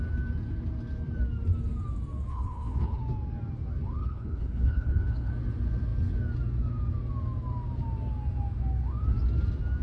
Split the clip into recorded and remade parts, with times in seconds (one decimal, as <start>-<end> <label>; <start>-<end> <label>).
0.0-2.3 recorded; 2.3-3.0 remade; 3.0-4.0 recorded; 4.0-5.3 remade; 5.3-9.8 recorded